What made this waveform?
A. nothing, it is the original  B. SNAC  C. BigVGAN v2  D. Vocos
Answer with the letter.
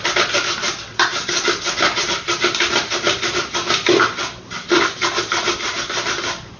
A